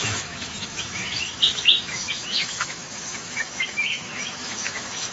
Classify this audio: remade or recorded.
remade